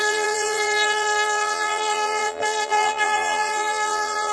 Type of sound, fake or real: fake